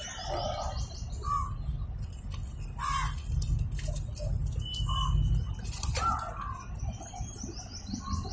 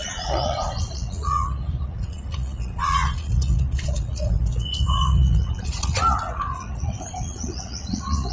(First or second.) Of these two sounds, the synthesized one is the second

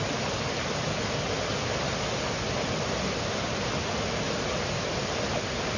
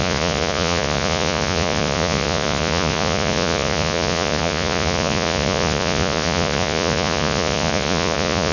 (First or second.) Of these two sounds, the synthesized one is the second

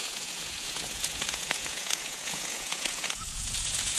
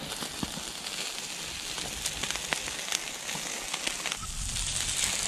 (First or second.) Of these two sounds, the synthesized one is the first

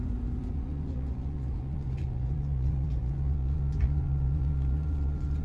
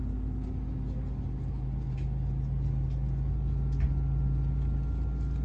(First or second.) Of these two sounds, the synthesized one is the first